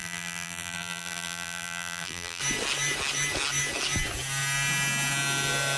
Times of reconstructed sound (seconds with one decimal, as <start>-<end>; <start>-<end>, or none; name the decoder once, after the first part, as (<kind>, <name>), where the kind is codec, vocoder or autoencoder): 0.0-2.4 (vocoder, BigVGAN v2)